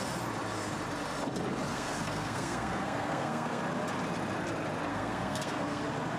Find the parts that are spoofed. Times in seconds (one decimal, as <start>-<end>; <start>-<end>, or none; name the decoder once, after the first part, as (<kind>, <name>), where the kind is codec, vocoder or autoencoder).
1.7-3.6 (codec, SNAC); 4.9-5.8